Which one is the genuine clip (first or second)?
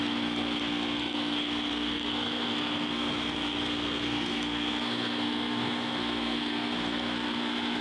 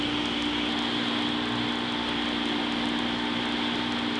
second